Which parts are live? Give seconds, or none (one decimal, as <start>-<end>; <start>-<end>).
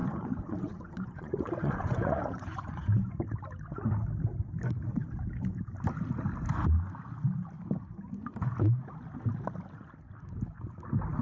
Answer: 3.2-11.2